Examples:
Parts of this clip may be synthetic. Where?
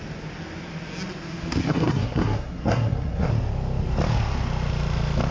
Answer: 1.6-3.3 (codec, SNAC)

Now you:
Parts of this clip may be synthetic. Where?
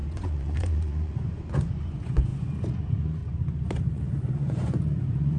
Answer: 0.0-3.2 (vocoder, Vocos); 3.9-5.4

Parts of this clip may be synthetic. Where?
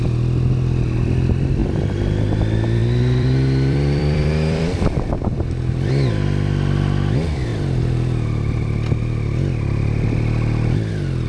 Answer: 2.8-5.9 (vocoder, BigVGAN v2)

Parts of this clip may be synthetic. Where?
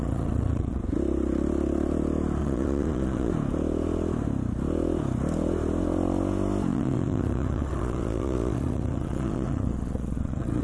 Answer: 0.0-0.8 (vocoder, Vocos); 2.4-3.3; 6.7-10.6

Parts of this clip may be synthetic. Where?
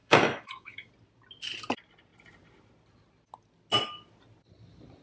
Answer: 0.0-0.9 (autoencoder, DAC-VAE)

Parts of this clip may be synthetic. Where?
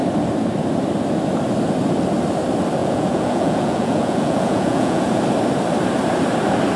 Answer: 2.8-5.2 (vocoder, Vocos)